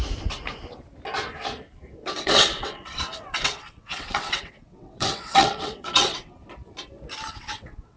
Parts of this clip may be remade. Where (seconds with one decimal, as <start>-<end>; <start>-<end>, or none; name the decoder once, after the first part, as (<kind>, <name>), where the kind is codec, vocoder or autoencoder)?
2.0-6.4 (vocoder, WaveNeXt); 7.3-8.0